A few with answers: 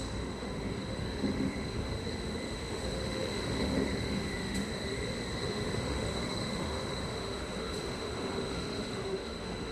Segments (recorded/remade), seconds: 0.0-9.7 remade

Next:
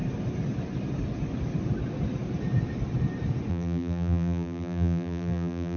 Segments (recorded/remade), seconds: 0.0-3.5 recorded; 3.5-5.8 remade

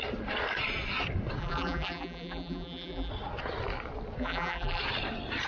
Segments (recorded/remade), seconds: 0.0-1.4 recorded; 1.4-3.1 remade; 3.1-4.2 recorded; 4.2-4.8 remade; 4.8-5.5 recorded

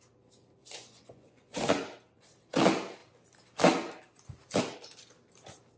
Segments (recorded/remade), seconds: 0.0-0.6 recorded; 0.6-1.6 remade; 1.6-5.8 recorded

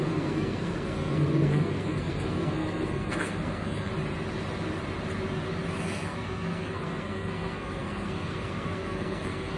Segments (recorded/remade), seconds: 0.0-3.9 remade; 3.9-5.8 recorded; 5.8-9.6 remade